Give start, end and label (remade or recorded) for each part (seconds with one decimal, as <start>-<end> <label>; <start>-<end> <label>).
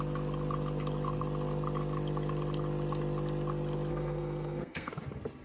0.0-3.9 recorded; 3.9-4.9 remade; 4.9-5.4 recorded